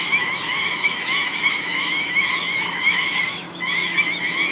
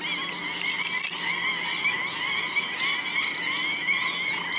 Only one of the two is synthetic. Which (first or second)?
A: first